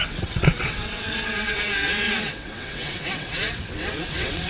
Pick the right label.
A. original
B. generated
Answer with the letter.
B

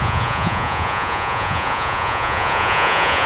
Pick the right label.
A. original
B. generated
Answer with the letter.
B